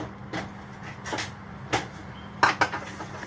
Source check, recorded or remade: recorded